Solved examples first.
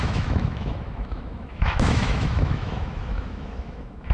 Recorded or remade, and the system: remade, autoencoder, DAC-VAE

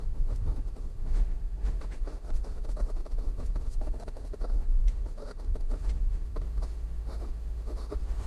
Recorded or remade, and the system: remade, autoencoder, DAC-VAE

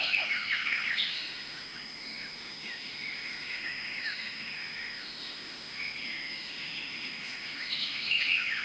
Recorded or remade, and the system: remade, autoencoder, DAC-VAE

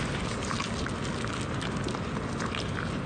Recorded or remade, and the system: recorded